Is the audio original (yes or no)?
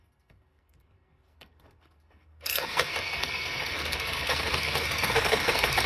no